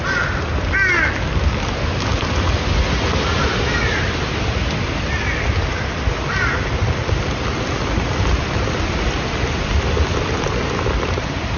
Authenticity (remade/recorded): recorded